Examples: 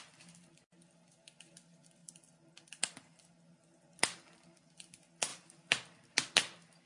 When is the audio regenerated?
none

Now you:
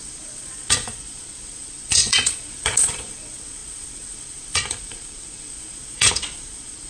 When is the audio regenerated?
0.0-6.9 (vocoder, Vocos)

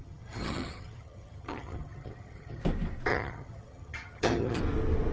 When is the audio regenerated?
0.0-2.6 (vocoder, HiFi-GAN); 3.1-4.6

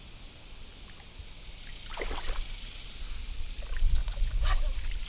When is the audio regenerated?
4.0-4.6 (vocoder, Vocos)

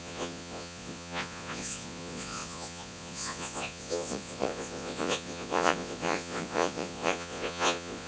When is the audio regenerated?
0.0-8.1 (vocoder, Vocos)

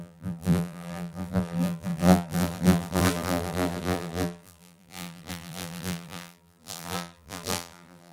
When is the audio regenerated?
0.0-8.1 (vocoder, BigVGAN v2)